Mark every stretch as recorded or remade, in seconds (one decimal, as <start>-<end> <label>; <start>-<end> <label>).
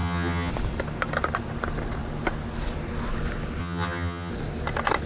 0.0-0.5 remade; 0.5-3.6 recorded; 3.6-4.3 remade; 4.3-5.1 recorded